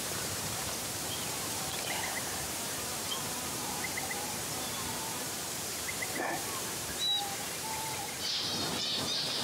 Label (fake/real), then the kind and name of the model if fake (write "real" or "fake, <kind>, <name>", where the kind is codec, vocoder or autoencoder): fake, vocoder, BigVGAN v2